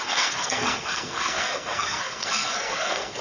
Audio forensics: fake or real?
fake